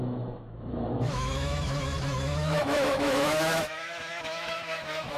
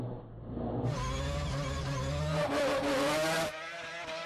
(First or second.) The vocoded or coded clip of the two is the first